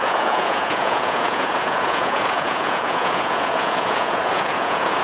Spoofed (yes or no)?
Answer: yes